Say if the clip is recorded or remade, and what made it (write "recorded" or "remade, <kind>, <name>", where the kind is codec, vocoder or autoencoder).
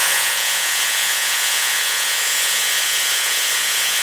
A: remade, vocoder, Vocos